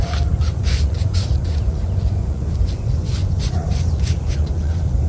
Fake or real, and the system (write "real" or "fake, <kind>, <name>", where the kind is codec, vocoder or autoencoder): fake, vocoder, Vocos